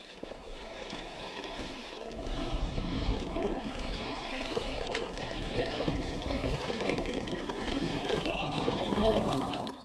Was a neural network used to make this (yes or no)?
yes